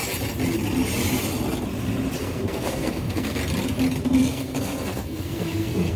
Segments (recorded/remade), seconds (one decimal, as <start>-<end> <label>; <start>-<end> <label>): 0.0-2.2 recorded; 2.2-3.4 remade; 3.4-4.0 recorded; 4.0-6.0 remade